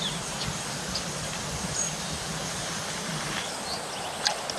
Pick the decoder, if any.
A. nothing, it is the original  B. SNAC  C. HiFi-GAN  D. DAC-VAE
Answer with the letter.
A